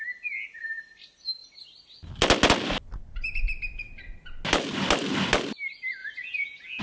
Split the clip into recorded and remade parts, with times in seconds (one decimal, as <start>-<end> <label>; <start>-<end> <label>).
0.0-6.0 recorded; 6.0-6.8 remade